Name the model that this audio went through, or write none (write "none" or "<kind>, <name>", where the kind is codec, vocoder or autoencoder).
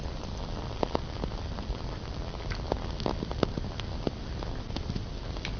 none